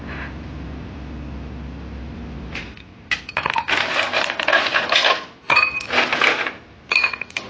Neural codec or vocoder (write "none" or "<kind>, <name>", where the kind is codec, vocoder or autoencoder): none